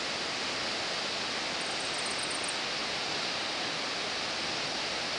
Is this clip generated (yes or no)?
no